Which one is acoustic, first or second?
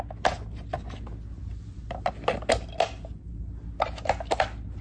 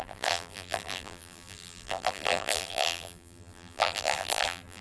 first